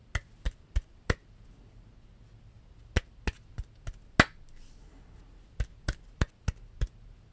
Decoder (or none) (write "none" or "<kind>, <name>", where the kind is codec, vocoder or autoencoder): none